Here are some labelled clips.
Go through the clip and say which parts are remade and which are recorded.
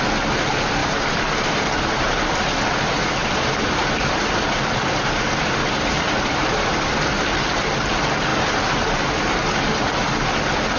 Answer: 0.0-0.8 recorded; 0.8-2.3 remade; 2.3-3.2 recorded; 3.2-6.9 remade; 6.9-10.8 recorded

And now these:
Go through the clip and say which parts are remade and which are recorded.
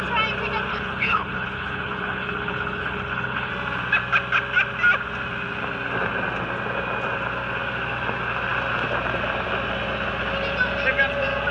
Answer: 0.0-0.7 recorded; 0.7-3.5 remade; 3.5-11.5 recorded